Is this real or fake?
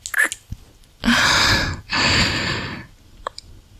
real